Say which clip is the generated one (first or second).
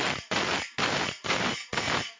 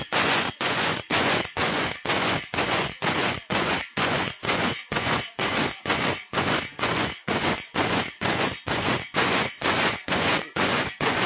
second